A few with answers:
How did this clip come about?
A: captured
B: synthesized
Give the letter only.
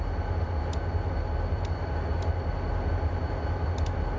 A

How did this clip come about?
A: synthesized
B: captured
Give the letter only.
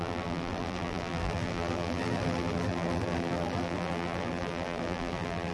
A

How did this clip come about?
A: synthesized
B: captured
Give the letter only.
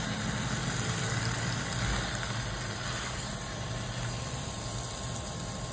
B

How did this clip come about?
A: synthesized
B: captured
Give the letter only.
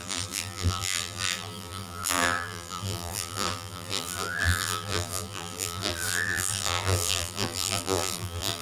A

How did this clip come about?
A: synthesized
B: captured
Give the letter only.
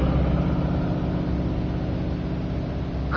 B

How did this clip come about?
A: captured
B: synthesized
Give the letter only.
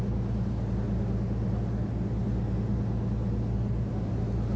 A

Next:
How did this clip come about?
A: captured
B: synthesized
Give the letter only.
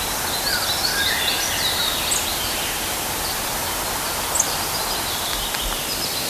A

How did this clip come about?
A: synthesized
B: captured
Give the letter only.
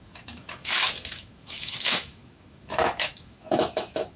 A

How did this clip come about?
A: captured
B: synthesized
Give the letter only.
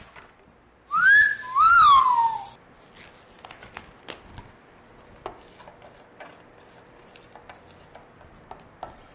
A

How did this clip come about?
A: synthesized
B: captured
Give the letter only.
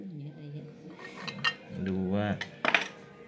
B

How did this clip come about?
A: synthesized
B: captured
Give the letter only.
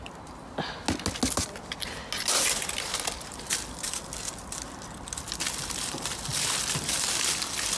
B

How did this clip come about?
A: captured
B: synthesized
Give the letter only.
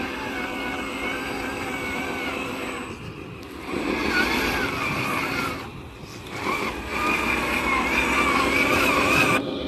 A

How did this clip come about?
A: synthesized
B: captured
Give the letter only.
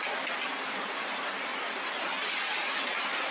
B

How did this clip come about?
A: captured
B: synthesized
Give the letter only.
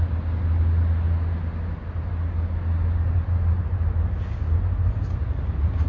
A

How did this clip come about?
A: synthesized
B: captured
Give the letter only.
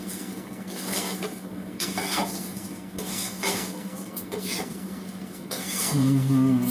A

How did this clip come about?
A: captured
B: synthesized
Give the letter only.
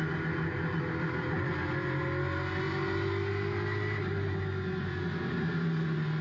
A